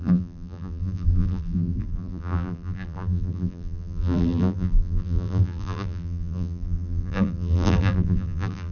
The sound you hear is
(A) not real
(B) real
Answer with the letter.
A